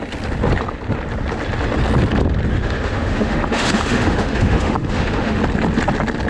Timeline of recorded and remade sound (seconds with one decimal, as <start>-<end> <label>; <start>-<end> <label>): 0.0-2.5 recorded; 2.5-5.4 remade; 5.4-6.3 recorded